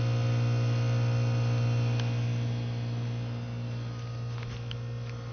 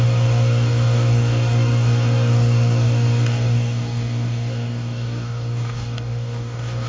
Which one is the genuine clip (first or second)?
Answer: first